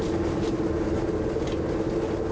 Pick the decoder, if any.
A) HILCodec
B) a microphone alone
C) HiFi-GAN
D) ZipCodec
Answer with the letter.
B